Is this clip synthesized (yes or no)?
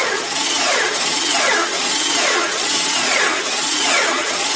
yes